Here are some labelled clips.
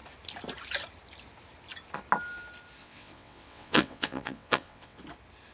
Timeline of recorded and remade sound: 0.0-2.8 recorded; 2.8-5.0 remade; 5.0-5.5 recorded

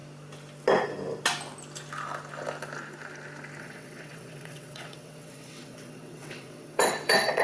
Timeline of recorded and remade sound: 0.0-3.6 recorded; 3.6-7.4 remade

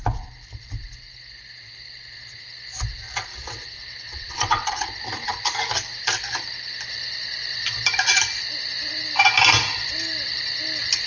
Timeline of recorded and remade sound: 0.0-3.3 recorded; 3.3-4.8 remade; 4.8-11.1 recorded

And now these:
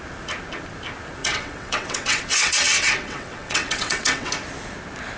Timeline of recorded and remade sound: 0.0-1.2 recorded; 1.2-4.3 remade; 4.3-5.2 recorded

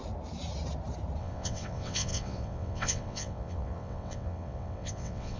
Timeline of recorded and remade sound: 0.0-1.2 recorded; 1.2-5.4 remade

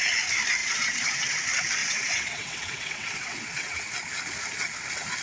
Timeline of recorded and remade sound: 0.0-0.6 recorded; 0.6-1.4 remade; 1.4-1.8 recorded; 1.8-3.9 remade; 3.9-5.2 recorded